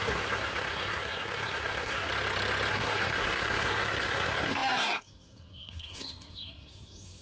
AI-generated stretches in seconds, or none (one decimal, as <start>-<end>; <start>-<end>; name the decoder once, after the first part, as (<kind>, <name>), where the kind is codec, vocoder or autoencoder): 0.0-2.1 (codec, SNAC); 2.7-7.2